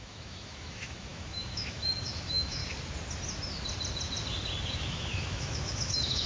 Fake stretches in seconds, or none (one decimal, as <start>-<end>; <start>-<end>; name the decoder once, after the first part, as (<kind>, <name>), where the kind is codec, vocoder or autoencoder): 0.0-2.6 (autoencoder, DAC-VAE); 4.7-6.3